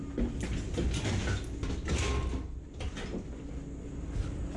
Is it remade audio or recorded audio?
recorded